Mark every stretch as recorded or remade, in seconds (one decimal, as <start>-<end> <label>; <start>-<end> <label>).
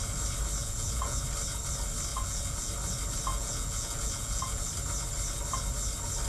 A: 0.0-0.6 recorded; 0.6-1.2 remade; 1.2-2.1 recorded; 2.1-2.7 remade; 2.7-3.3 recorded; 3.3-4.7 remade; 4.7-6.3 recorded